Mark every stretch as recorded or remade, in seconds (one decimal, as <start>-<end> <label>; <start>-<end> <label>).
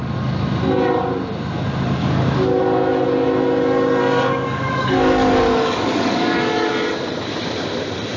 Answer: 0.0-2.0 recorded; 2.0-2.6 remade; 2.6-4.0 recorded; 4.0-6.7 remade; 6.7-8.2 recorded